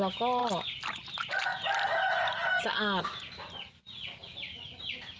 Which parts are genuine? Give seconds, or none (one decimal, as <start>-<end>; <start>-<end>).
0.0-5.2